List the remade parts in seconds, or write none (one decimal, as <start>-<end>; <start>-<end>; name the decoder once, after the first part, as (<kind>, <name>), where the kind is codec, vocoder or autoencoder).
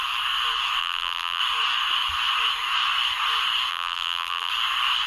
0.8-1.4 (vocoder, BigVGAN v2); 3.7-4.5